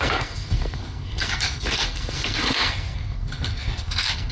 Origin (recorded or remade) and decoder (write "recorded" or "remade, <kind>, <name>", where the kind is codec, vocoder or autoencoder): remade, codec, SNAC